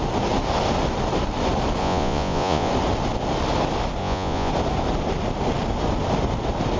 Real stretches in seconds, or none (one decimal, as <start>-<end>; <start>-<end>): 0.0-1.8; 2.7-4.0; 4.5-6.8